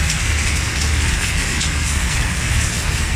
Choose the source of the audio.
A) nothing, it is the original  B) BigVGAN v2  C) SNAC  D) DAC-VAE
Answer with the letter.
C